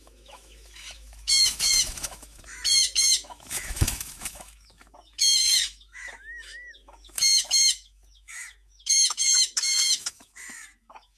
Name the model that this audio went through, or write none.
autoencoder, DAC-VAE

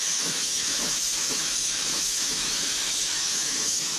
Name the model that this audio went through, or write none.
autoencoder, DAC-VAE